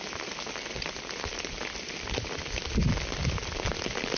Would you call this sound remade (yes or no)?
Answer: no